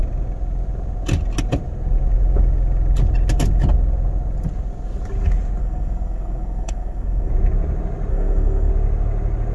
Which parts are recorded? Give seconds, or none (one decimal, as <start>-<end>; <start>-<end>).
0.0-5.6; 7.3-8.1; 8.7-9.5

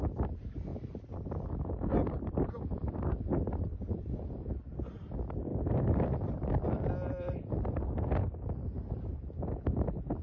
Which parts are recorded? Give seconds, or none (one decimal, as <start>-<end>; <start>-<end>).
0.0-0.7; 2.9-3.7; 4.6-5.5; 7.5-10.2

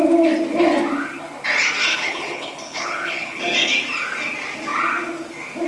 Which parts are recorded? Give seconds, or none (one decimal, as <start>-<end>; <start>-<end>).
0.0-1.9; 3.4-5.7

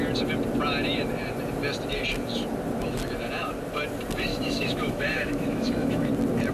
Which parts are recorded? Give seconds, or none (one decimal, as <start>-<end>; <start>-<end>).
0.0-4.3; 6.1-6.5

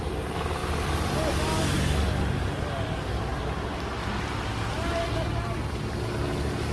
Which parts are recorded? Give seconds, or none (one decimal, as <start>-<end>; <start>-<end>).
0.0-6.7